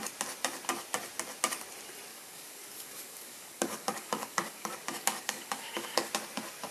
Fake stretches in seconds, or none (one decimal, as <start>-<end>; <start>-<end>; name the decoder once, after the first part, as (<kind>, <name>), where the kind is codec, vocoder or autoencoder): 2.1-6.1 (codec, DAC)